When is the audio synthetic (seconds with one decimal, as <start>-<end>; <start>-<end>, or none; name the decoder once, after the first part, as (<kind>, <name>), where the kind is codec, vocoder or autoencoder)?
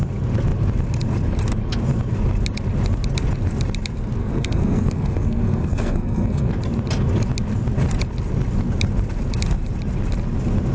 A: 4.2-6.5 (codec, SNAC)